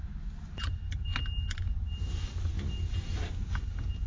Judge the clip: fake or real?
real